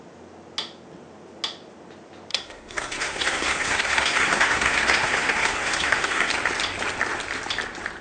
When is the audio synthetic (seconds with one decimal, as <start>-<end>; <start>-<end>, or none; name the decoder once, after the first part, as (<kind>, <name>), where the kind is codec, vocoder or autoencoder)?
2.3-6.3 (codec, SNAC)